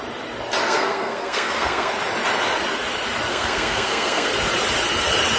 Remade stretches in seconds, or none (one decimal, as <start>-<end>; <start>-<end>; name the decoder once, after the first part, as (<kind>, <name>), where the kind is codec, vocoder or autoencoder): 0.6-1.9 (codec, SNAC); 3.3-4.3